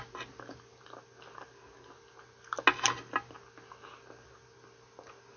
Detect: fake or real real